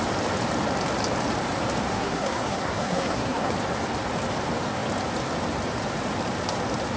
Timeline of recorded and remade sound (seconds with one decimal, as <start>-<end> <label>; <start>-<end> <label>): 0.0-1.9 recorded; 1.9-3.5 remade; 3.5-7.0 recorded